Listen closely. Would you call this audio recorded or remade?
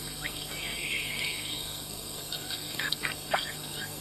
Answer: remade